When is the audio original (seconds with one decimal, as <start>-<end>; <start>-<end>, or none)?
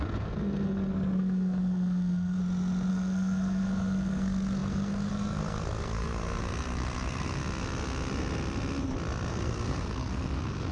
2.4-2.9; 7.4-9.3